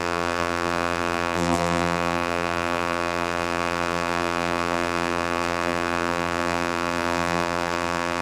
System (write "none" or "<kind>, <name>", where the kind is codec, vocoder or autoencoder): vocoder, BigVGAN v2